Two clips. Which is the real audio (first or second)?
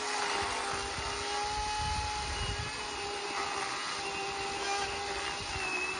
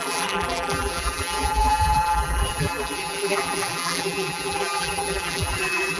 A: first